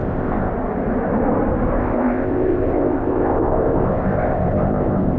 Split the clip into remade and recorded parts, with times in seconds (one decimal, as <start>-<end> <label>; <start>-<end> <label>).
0.0-0.5 remade; 0.5-1.8 recorded; 1.8-5.2 remade

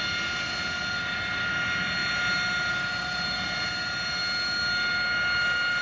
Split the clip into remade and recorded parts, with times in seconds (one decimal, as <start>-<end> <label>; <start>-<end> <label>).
0.0-5.8 recorded

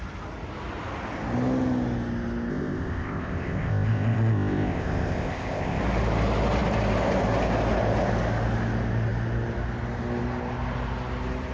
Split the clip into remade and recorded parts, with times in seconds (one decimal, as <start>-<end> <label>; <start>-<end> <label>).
0.0-2.5 recorded; 2.5-5.8 remade; 5.8-11.5 recorded

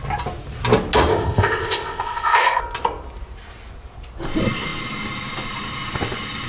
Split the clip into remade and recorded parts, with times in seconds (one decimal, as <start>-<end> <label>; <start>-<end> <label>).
0.0-1.1 recorded; 1.1-2.6 remade; 2.6-6.5 recorded